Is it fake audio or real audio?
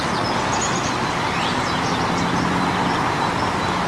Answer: real